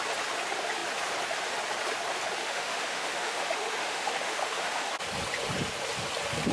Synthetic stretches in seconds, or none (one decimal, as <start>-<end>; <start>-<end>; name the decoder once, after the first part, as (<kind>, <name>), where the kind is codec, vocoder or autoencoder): 2.4-4.9 (autoencoder, DAC-VAE)